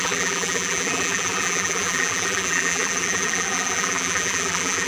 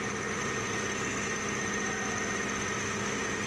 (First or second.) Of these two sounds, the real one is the second